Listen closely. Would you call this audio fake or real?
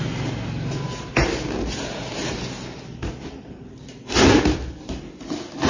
real